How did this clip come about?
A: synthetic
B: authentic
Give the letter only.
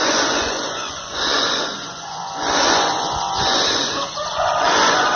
A